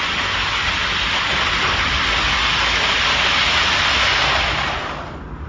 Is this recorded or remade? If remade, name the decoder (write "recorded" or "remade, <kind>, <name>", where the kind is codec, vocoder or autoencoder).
recorded